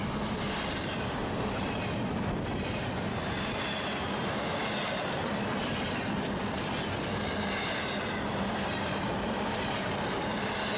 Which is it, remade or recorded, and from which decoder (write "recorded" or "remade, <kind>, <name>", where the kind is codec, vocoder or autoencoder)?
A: recorded